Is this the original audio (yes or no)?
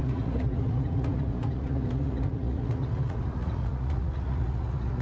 no